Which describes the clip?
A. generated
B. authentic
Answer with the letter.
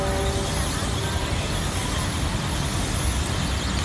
B